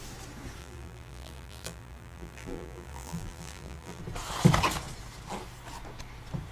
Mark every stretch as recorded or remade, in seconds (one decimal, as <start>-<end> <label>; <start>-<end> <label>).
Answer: 0.0-0.6 recorded; 0.6-4.0 remade; 4.0-6.5 recorded